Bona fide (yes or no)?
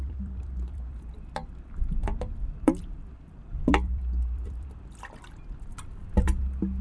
no